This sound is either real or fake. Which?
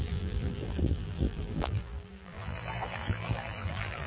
fake